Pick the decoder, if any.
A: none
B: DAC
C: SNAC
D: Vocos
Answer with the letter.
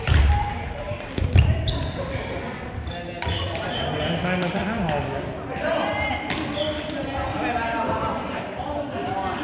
A